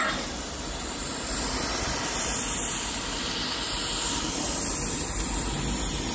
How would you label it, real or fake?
real